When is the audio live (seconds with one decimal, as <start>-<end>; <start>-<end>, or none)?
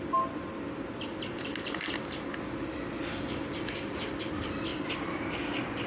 0.0-5.9